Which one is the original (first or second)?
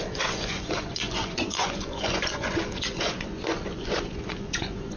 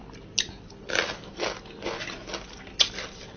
second